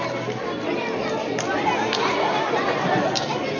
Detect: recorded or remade recorded